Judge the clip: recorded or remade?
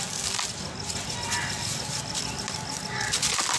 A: recorded